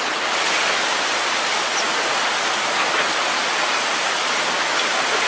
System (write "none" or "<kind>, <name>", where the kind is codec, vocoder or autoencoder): none